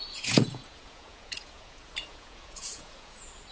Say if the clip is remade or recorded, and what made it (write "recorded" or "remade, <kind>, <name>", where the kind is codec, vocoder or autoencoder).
remade, vocoder, Vocos